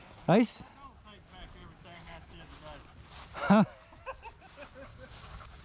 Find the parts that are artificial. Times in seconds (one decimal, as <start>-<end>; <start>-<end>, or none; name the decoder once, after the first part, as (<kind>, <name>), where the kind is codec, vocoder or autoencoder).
1.6-2.4 (codec, DAC); 4.9-5.6